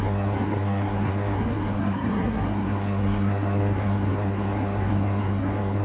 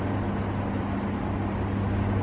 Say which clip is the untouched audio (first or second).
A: second